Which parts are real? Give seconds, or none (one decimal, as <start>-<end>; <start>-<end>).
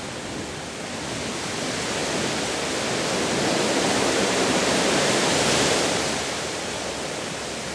2.0-3.2